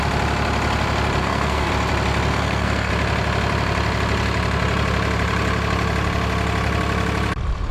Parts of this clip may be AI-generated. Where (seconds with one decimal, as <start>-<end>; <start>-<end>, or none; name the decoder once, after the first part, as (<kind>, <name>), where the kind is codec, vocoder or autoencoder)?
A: 1.2-1.7 (codec, SNAC); 2.3-2.9